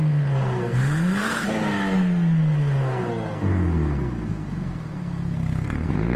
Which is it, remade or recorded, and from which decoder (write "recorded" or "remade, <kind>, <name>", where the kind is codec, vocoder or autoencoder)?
remade, codec, SNAC